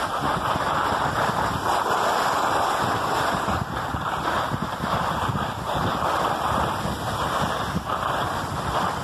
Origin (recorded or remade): recorded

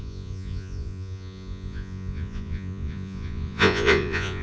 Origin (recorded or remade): remade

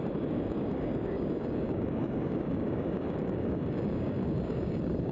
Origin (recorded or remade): remade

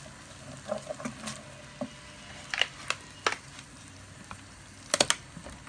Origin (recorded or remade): recorded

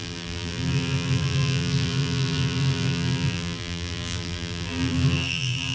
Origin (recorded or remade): remade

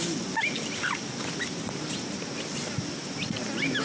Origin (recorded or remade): recorded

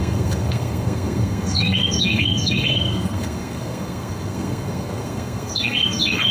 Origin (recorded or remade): remade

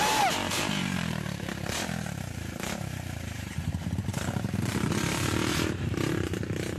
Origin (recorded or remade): remade